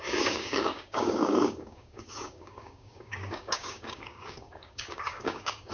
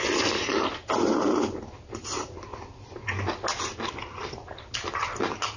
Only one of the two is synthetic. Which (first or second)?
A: first